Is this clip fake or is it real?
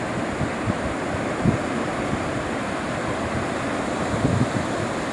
real